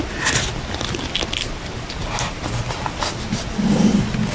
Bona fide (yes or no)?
yes